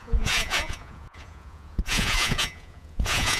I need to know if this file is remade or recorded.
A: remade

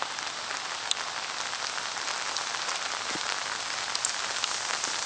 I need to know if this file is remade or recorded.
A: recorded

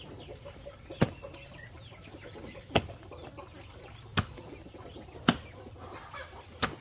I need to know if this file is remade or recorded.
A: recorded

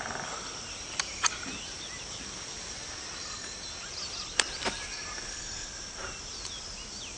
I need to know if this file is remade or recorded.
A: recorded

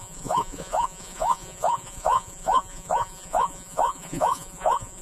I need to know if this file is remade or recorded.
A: remade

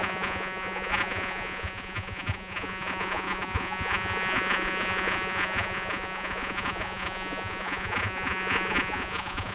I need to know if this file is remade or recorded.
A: remade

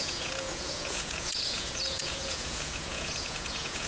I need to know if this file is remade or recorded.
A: remade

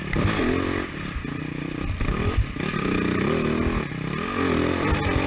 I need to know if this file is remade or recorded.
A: recorded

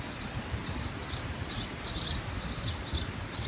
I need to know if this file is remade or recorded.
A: recorded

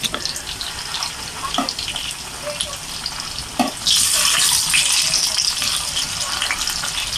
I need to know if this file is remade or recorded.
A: recorded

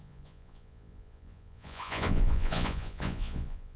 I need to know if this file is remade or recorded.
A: remade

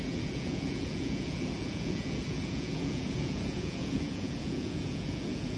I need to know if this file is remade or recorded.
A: remade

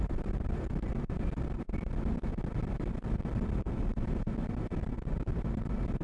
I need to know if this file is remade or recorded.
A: recorded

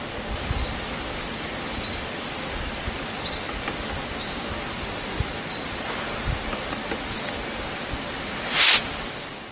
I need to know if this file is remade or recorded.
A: recorded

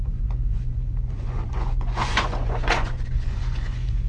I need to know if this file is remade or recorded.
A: remade